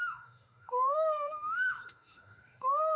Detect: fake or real fake